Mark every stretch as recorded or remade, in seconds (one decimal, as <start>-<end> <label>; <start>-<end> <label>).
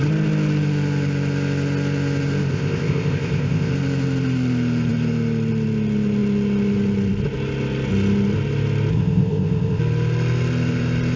0.0-2.5 recorded; 2.5-3.7 remade; 3.7-8.9 recorded; 8.9-9.8 remade; 9.8-11.2 recorded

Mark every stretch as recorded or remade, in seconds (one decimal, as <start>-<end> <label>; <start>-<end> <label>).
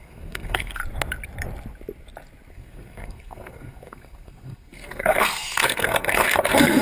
0.0-0.8 remade; 0.8-2.5 recorded; 2.5-6.8 remade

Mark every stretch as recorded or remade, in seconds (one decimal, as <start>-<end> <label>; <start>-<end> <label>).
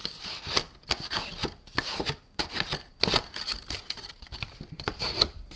0.0-5.6 recorded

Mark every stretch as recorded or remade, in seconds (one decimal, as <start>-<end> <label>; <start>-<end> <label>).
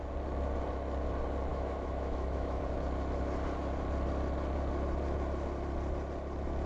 0.0-1.5 recorded; 1.5-2.6 remade; 2.6-6.7 recorded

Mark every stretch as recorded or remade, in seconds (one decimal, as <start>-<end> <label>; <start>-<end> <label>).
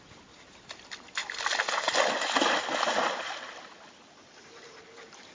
0.0-1.2 recorded; 1.2-3.2 remade; 3.2-5.3 recorded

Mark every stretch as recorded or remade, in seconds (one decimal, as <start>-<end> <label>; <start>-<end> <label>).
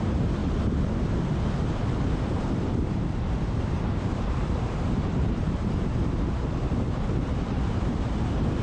0.0-0.4 remade; 0.4-2.1 recorded; 2.1-5.9 remade; 5.9-7.7 recorded; 7.7-8.6 remade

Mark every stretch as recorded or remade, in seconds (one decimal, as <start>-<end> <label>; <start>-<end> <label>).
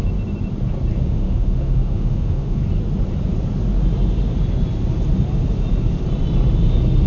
0.0-1.0 recorded; 1.0-2.6 remade; 2.6-7.1 recorded